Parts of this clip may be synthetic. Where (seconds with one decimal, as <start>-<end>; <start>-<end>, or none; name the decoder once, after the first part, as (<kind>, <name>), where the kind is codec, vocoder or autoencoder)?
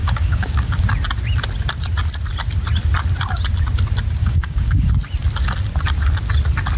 0.0-0.8 (codec, DAC); 4.2-4.9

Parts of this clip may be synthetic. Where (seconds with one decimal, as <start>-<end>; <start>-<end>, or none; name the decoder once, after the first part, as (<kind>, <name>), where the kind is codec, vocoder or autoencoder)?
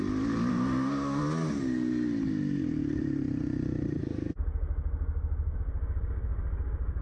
0.5-1.2 (codec, DAC)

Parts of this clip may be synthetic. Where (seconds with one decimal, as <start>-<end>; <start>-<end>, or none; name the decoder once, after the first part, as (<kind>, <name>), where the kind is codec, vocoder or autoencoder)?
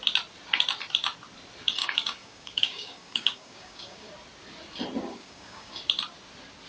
1.8-4.1 (codec, DAC); 5.1-5.7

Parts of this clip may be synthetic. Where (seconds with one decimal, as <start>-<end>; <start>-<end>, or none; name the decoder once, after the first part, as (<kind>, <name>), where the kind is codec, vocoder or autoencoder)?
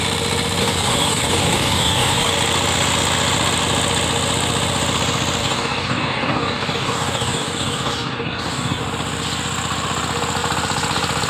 0.6-2.3 (codec, DAC); 5.4-8.8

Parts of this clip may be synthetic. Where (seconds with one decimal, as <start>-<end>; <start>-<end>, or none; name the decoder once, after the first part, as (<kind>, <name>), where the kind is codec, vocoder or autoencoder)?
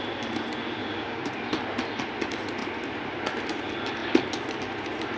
0.8-1.3 (codec, DAC)